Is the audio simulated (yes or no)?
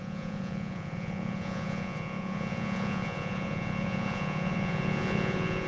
yes